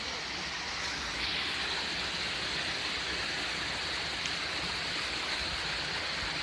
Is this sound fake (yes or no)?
no